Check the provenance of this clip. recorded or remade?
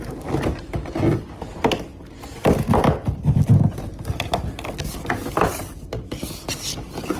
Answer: recorded